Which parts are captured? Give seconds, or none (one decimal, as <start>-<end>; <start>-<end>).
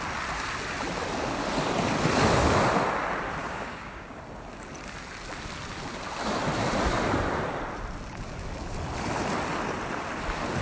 0.0-3.4; 4.1-10.6